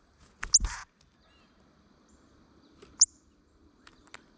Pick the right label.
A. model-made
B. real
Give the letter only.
B